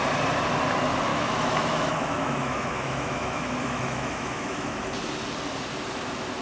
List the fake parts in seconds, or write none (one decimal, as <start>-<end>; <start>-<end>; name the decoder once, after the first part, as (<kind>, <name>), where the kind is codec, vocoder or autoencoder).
1.1-4.9 (autoencoder, DAC-VAE)

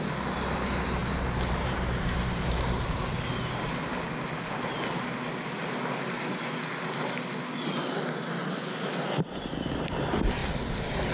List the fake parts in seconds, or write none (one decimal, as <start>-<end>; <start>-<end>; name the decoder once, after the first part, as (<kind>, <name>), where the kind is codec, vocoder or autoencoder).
1.0-3.1 (vocoder, BigVGAN v2); 10.4-11.1